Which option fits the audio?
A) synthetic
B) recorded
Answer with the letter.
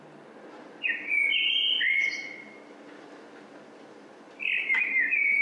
B